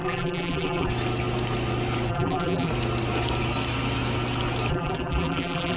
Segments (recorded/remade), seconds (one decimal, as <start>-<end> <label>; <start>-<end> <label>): 0.0-0.9 remade; 0.9-2.1 recorded; 2.1-2.7 remade; 2.7-4.7 recorded; 4.7-5.8 remade